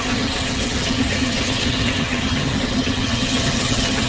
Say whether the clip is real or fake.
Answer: fake